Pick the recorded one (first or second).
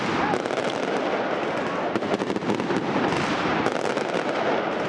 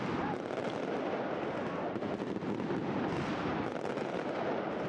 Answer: first